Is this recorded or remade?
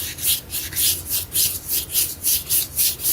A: recorded